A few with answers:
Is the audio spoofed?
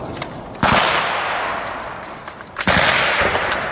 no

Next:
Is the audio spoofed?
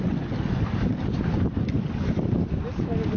no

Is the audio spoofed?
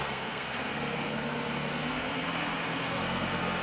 yes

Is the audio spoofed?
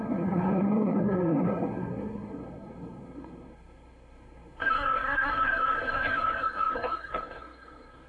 yes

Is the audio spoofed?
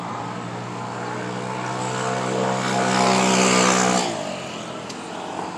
no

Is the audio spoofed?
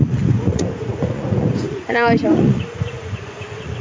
yes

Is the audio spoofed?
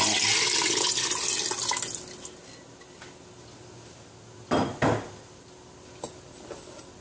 no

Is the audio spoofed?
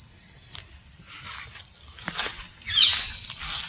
no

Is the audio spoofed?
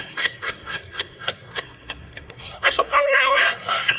yes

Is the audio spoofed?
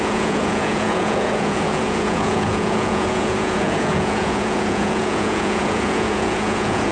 yes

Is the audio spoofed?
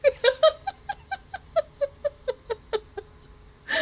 no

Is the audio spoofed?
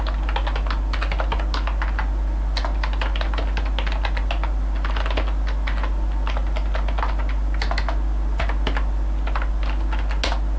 no